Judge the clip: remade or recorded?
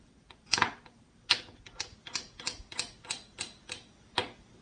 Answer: recorded